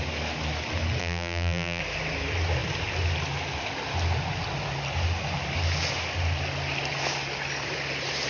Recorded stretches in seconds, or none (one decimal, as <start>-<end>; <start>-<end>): 0.0-1.0; 1.8-8.3